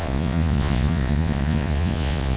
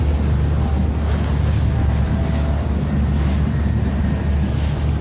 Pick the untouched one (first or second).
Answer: second